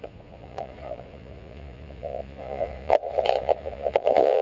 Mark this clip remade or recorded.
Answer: remade